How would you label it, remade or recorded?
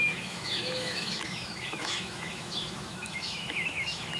remade